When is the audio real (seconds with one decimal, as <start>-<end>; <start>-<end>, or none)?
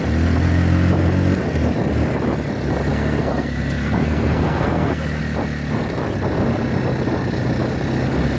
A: 0.0-2.9; 5.2-8.4